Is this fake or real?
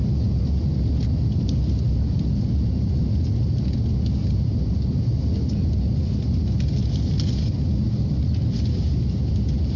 real